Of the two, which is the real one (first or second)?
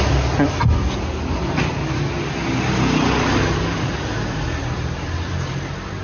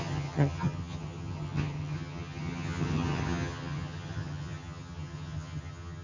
first